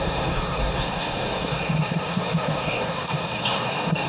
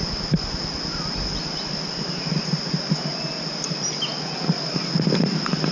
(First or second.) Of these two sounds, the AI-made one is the first